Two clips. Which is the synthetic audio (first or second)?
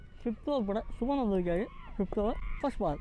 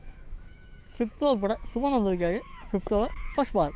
second